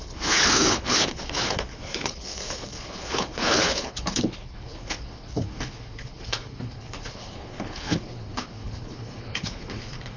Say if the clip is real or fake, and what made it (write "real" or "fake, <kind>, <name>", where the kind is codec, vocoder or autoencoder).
fake, codec, HILCodec